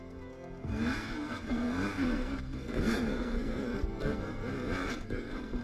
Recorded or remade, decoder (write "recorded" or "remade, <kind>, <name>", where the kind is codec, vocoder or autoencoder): remade, codec, SNAC